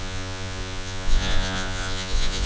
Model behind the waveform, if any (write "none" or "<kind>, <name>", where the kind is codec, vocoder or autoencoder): vocoder, Vocos